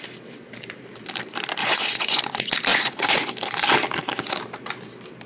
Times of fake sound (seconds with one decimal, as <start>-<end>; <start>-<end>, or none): 1.6-2.2; 2.7-3.3